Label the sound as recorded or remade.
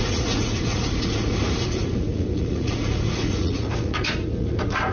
remade